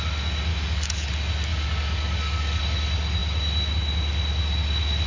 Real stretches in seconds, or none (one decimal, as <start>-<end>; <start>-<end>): 0.0-0.5; 1.1-1.5; 2.6-5.1